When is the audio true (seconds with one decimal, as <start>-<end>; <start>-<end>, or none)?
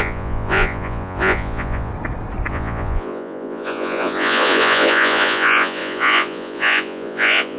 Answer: 1.9-2.5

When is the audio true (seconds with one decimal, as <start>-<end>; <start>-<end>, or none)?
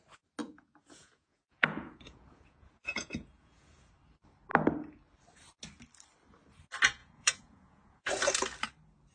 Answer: 0.0-0.4; 3.9-7.0; 8.1-9.1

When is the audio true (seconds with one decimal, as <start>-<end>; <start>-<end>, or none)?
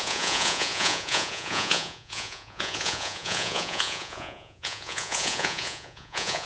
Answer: none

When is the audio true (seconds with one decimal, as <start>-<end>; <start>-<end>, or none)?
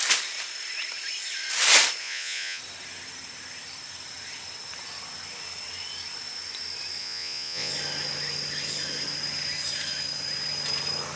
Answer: 0.0-2.0; 2.6-7.0; 7.7-11.2